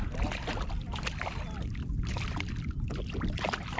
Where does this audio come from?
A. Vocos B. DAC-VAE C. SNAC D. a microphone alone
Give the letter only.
D